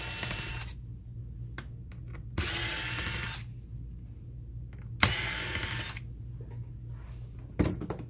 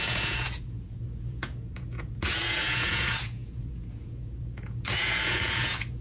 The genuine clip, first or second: first